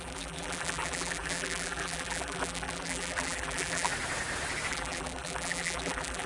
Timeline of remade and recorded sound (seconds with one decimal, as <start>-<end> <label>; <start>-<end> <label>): 0.0-3.9 remade; 3.9-4.7 recorded; 4.7-6.3 remade